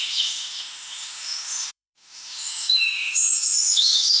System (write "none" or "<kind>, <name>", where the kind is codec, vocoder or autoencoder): autoencoder, DAC-VAE